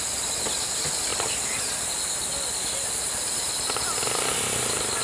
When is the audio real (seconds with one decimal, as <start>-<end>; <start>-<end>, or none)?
0.0-5.0

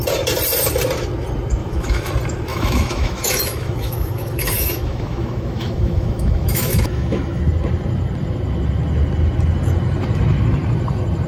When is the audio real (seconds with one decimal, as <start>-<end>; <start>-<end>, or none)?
0.0-1.6; 2.1-2.5; 7.4-11.3

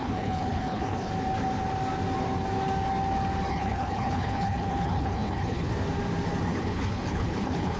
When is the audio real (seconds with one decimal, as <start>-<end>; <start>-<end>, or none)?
1.1-3.5; 5.7-6.5

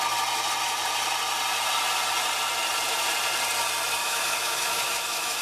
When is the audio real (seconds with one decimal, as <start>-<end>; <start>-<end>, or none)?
0.0-4.0

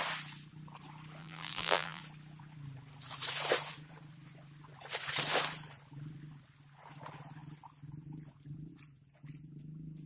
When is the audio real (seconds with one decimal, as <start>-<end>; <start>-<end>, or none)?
0.0-1.2; 2.0-10.1

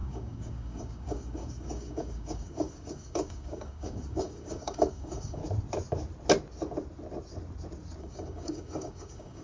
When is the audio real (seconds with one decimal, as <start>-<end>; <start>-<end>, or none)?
5.4-8.0

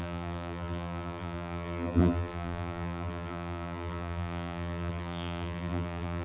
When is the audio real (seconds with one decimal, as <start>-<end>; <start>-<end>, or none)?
none